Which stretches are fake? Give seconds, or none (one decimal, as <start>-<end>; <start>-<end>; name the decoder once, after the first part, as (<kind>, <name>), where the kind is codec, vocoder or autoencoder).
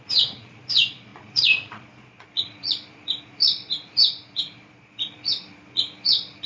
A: 0.0-6.5 (vocoder, Vocos)